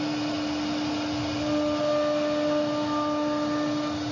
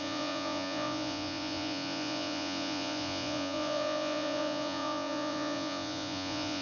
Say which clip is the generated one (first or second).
second